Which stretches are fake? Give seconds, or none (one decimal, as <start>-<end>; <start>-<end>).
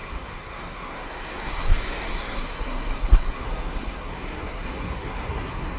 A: 0.0-5.8